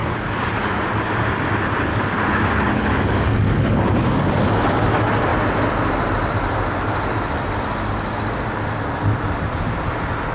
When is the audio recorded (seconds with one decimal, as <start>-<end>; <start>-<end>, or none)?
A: 0.8-1.9; 3.6-10.3